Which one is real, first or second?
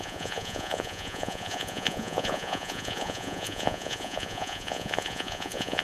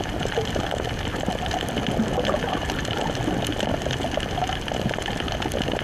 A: second